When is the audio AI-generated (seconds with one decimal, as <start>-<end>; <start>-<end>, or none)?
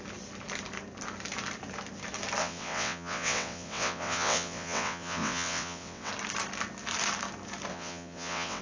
2.4-6.1; 7.7-8.6